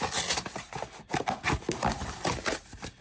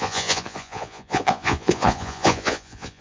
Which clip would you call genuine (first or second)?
first